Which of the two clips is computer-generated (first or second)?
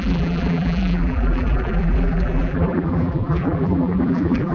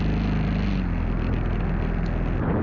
first